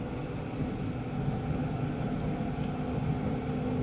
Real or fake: real